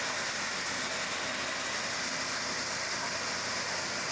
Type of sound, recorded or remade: recorded